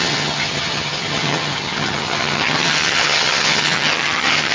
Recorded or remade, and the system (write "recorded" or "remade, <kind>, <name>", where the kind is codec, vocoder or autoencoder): remade, vocoder, HiFi-GAN